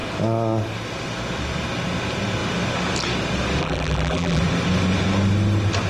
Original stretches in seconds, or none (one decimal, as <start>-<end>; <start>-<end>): 0.0-3.6; 4.4-5.9

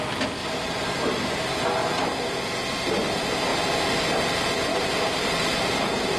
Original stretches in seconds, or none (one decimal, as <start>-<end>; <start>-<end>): 0.0-0.4; 1.6-3.5; 4.1-4.7; 5.7-6.2

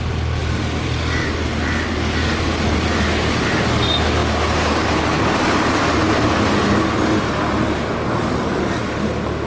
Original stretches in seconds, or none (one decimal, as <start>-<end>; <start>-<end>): 0.0-0.4; 1.0-9.5

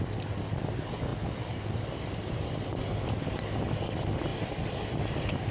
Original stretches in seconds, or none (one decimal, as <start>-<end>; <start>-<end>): 0.0-1.1; 2.5-4.3; 5.0-5.5

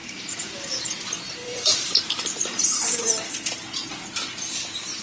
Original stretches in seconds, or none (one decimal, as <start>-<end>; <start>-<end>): 0.9-1.4; 3.5-5.0

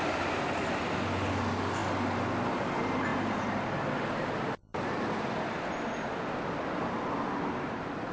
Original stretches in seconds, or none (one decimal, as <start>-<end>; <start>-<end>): 0.0-1.8; 2.5-3.1; 3.9-4.7